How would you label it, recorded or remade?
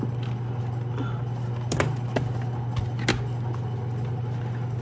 recorded